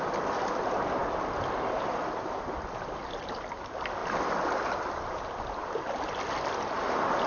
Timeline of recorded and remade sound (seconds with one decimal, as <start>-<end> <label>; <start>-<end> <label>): 0.0-7.3 recorded